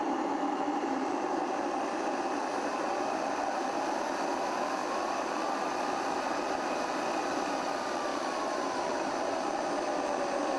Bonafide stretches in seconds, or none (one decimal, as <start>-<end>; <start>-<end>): 0.0-2.7; 3.3-4.8; 6.2-8.1; 9.2-10.6